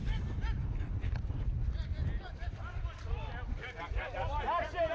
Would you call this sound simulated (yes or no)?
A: no